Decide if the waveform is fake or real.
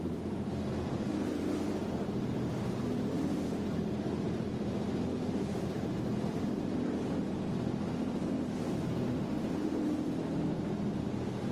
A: real